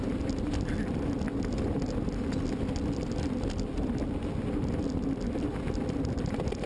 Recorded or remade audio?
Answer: recorded